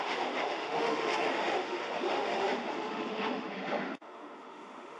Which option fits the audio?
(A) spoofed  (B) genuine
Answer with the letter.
A